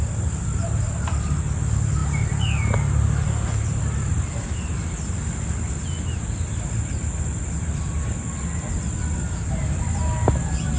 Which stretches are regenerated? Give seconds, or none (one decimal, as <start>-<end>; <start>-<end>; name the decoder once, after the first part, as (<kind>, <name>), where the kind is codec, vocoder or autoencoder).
none